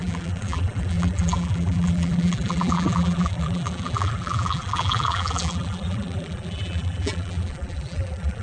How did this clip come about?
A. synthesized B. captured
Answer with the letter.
A